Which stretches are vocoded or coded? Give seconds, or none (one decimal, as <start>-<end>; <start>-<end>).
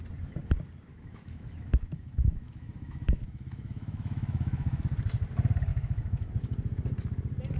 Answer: 0.9-4.8; 5.7-6.3